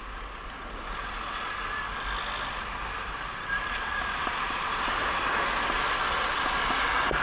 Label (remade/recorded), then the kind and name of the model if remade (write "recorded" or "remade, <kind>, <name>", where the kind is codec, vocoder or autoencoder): recorded